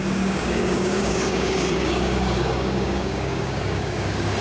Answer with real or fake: fake